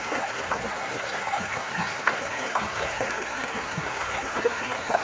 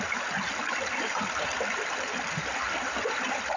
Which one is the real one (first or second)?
second